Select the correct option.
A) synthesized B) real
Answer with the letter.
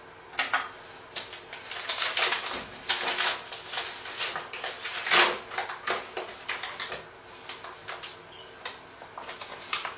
B